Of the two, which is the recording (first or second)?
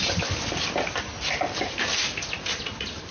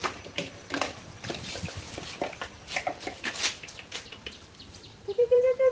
first